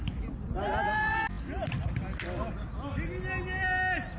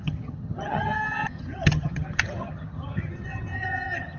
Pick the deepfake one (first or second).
second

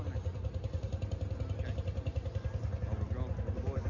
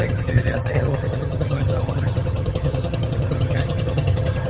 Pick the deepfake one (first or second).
second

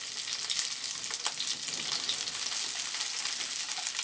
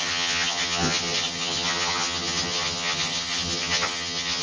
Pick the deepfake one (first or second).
second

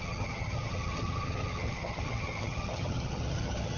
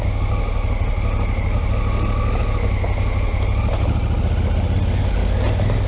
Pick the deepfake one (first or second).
first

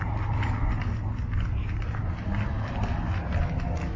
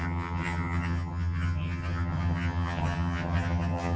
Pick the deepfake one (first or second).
second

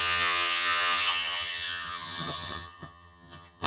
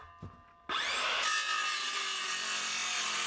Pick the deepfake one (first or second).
first